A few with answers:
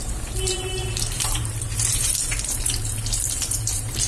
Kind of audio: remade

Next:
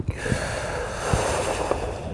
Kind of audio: remade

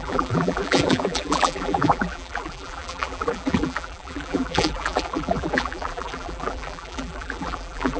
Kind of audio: remade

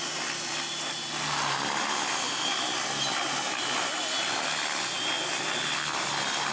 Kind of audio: recorded